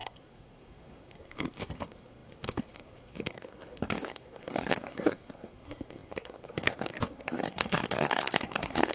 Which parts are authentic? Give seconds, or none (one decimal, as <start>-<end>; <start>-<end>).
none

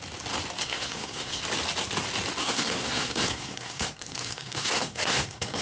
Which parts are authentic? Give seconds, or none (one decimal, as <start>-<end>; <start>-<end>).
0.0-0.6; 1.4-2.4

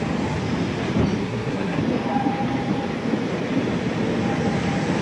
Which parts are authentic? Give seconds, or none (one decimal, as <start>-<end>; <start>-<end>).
0.0-1.2; 1.8-5.0

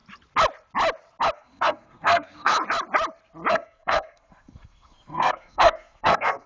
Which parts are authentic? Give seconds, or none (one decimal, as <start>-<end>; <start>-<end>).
0.0-1.3; 2.5-3.5

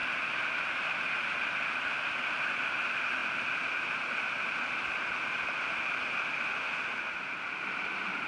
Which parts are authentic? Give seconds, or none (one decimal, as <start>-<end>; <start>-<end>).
0.0-8.3

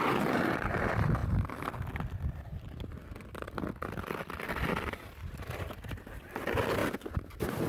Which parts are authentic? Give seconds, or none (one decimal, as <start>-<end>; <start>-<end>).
0.0-7.7

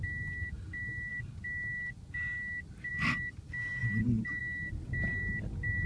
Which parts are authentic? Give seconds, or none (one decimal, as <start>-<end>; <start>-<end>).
0.0-5.9